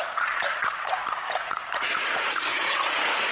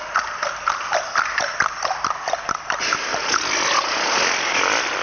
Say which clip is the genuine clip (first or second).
second